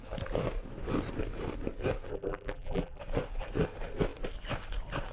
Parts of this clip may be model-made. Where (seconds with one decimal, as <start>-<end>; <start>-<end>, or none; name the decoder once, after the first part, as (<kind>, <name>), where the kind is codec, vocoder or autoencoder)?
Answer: 2.1-3.0 (vocoder, BigVGAN v2)